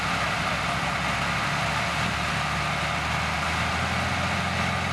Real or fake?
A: real